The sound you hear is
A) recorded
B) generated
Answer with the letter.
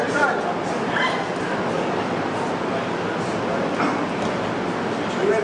A